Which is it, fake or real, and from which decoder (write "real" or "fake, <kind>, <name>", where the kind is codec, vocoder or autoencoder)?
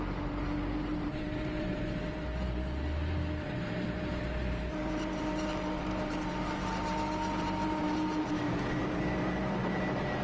fake, vocoder, BigVGAN v2